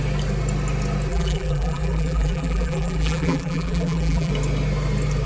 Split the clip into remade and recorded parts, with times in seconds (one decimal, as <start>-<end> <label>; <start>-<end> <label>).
0.0-1.1 recorded; 1.1-4.3 remade; 4.3-5.3 recorded